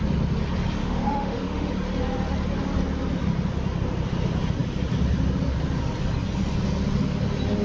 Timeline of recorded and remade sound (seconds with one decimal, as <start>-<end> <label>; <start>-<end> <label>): 0.0-0.8 recorded; 0.8-1.7 remade; 1.7-7.6 recorded